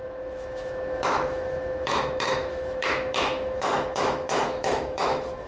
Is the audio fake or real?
fake